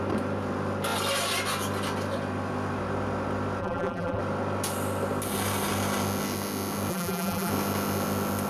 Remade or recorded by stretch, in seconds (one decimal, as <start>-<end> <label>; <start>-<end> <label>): 0.0-3.6 recorded; 3.6-4.2 remade; 4.2-6.9 recorded; 6.9-7.5 remade; 7.5-8.5 recorded